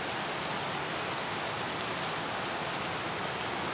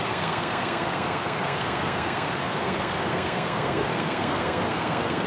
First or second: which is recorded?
first